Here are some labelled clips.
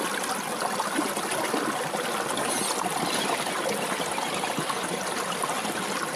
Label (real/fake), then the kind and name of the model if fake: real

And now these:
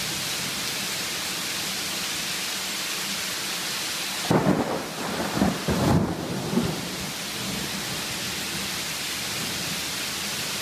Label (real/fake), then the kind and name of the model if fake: real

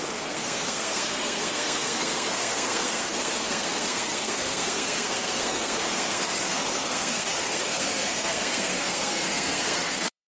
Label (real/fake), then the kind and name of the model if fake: fake, codec, SNAC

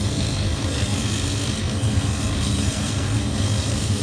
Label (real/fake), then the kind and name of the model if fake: fake, codec, SNAC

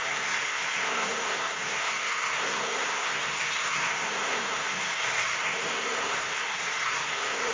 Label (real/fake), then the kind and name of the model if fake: fake, codec, SNAC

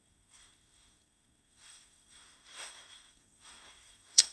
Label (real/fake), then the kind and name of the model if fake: fake, codec, SNAC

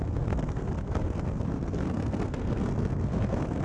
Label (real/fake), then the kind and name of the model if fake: fake, codec, SNAC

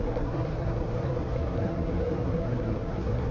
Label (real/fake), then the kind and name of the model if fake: fake, codec, SNAC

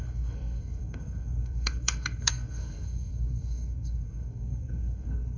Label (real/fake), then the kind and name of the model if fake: fake, codec, SNAC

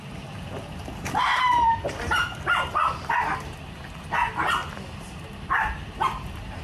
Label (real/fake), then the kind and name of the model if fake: real